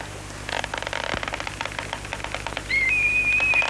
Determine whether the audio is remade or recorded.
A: recorded